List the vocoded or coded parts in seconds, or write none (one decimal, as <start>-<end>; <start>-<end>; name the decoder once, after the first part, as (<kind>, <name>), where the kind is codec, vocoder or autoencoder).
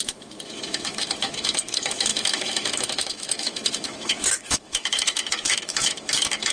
0.0-6.5 (autoencoder, DAC-VAE)